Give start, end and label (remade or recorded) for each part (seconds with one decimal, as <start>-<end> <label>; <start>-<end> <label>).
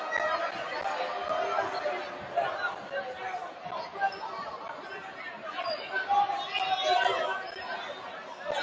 0.0-8.6 recorded